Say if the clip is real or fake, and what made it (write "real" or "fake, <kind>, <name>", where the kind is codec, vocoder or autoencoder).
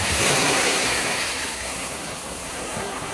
fake, codec, SNAC